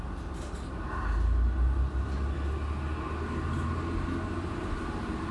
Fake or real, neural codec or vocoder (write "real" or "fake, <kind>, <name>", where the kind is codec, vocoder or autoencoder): real